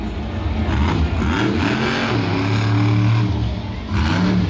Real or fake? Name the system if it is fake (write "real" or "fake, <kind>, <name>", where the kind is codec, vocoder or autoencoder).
real